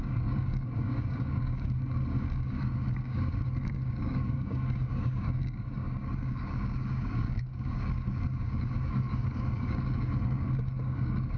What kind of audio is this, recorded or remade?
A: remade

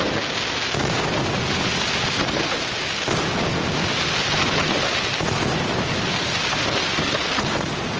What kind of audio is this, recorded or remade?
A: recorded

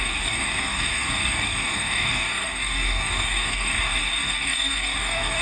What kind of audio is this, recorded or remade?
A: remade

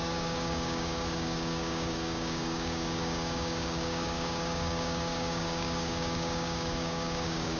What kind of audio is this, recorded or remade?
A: remade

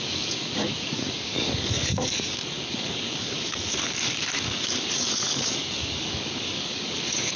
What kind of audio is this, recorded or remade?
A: remade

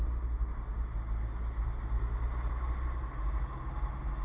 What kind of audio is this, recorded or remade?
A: recorded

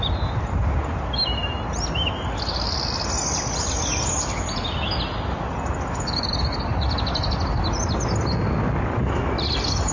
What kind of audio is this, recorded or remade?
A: recorded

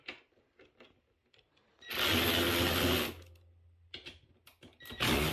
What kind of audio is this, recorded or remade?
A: recorded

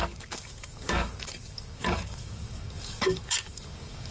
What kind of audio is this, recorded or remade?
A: remade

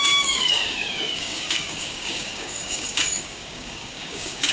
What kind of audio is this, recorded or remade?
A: remade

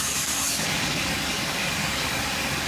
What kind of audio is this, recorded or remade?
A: remade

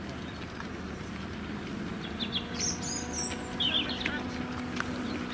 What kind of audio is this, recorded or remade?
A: recorded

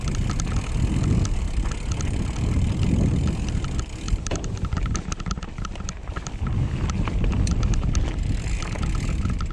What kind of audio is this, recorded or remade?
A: recorded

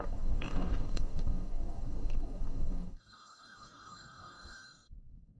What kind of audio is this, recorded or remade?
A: remade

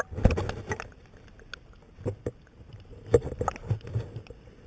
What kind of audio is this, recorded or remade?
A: recorded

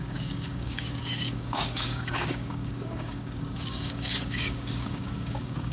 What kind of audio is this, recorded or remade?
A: remade